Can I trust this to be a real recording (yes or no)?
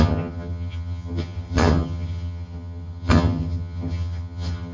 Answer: no